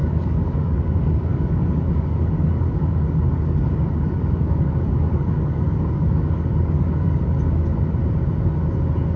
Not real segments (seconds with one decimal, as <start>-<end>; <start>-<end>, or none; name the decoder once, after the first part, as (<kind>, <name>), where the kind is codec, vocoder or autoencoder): 0.0-7.7 (codec, DAC)